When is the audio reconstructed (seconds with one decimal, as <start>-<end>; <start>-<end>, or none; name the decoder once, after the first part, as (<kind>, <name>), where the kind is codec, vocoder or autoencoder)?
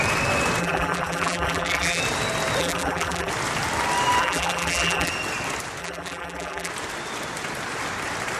0.6-2.0 (vocoder, BigVGAN v2); 2.6-3.3; 4.2-5.1; 5.8-6.7